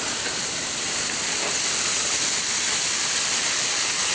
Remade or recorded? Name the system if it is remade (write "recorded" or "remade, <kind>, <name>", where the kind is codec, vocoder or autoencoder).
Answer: remade, vocoder, BigVGAN v2